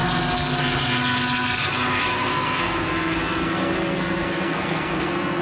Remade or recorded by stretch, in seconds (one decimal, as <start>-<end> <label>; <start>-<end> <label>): 0.0-2.1 recorded; 2.1-5.4 remade